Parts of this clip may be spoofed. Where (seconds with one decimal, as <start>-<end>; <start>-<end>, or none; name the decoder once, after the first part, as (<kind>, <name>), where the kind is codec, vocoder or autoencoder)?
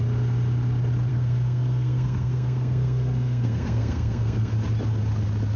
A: 1.1-4.5 (codec, SNAC)